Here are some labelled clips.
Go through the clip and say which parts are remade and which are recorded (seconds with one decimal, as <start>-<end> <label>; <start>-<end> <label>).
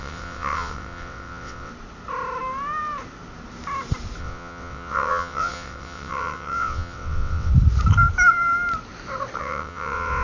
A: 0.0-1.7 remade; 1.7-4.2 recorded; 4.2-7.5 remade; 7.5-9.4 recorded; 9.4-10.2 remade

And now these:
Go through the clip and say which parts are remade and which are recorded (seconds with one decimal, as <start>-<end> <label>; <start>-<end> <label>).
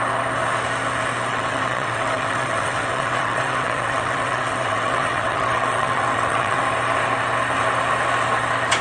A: 0.0-1.3 recorded; 1.3-6.6 remade; 6.6-8.8 recorded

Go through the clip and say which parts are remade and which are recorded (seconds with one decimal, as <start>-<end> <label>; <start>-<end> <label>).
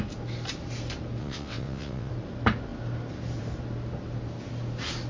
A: 0.0-1.2 recorded; 1.2-2.1 remade; 2.1-5.1 recorded